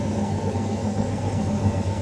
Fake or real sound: fake